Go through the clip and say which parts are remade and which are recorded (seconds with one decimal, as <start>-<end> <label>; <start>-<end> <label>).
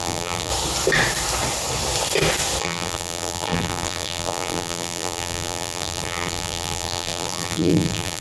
0.0-0.5 remade; 0.5-2.6 recorded; 2.6-8.2 remade